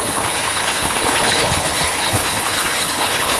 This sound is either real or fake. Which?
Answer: fake